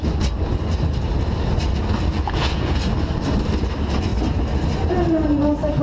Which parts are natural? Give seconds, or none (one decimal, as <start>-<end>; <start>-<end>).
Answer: 0.0-2.1; 2.8-5.8